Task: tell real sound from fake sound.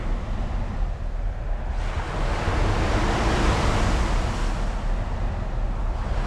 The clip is real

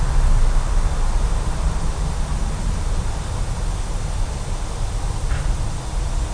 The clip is real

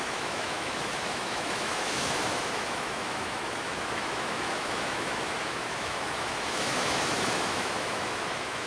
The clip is fake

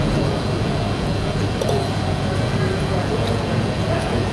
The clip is fake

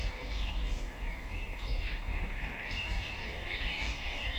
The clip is fake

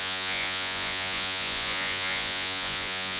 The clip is fake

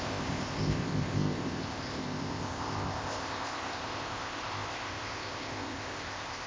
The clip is fake